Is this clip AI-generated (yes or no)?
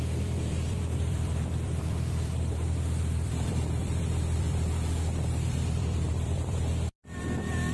yes